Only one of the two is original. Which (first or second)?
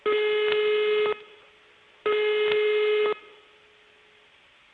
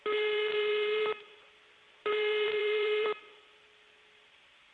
first